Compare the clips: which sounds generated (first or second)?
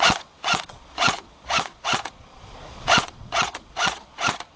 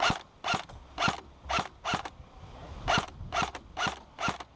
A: first